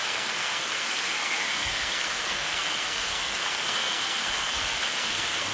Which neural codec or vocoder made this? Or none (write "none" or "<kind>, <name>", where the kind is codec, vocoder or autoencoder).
codec, SNAC